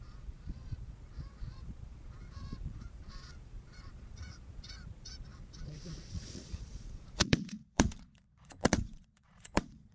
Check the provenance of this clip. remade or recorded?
remade